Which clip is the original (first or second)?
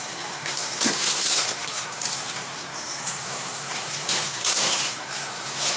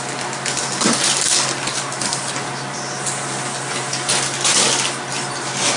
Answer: second